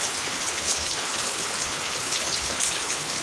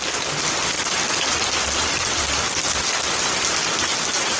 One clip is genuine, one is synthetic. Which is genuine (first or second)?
second